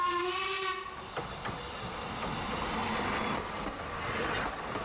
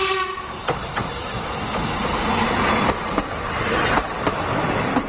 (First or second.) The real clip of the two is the first